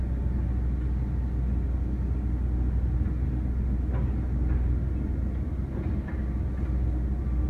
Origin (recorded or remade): recorded